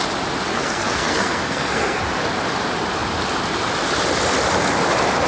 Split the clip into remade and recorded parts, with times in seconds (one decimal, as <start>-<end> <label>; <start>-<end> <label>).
0.0-0.5 recorded; 0.5-2.0 remade; 2.0-5.3 recorded